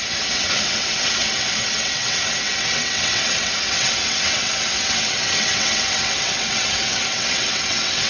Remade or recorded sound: remade